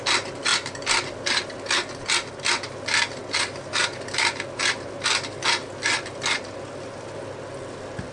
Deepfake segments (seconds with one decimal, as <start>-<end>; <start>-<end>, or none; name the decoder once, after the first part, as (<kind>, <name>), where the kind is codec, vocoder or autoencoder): none